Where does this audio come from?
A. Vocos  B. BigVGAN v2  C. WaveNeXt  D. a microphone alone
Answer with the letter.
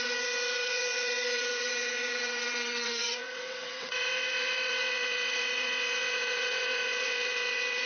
C